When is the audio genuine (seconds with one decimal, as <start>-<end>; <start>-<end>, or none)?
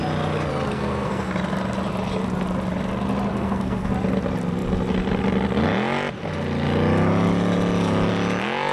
0.0-0.7; 1.3-3.3; 3.9-8.7